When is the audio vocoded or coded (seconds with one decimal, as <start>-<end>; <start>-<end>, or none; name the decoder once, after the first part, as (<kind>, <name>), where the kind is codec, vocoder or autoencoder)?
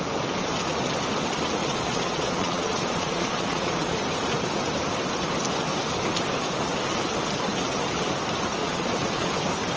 1.6-4.0 (vocoder, Vocos); 8.6-9.3